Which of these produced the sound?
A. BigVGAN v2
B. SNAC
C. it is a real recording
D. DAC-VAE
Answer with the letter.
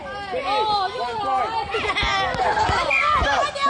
C